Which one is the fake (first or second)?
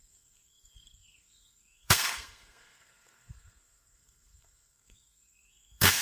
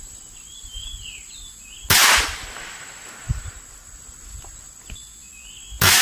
first